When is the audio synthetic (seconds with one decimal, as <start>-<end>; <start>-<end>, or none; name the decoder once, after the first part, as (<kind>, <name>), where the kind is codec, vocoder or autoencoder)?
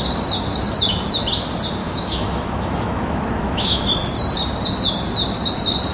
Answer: 1.8-3.8 (autoencoder, DAC-VAE)